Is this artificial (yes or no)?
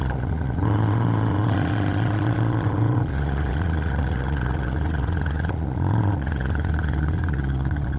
yes